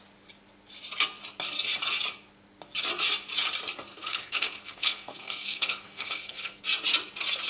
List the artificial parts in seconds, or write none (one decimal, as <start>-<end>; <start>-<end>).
3.9-6.6